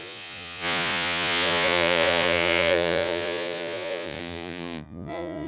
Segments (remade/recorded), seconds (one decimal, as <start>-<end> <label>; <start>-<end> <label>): 0.0-5.5 remade